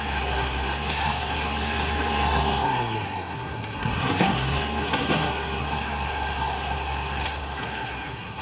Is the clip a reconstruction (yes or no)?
yes